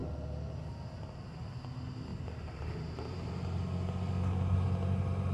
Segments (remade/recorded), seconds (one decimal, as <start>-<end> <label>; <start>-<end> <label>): 0.0-2.1 recorded; 2.1-3.3 remade; 3.3-5.3 recorded